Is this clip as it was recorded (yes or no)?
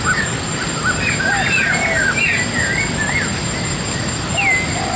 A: yes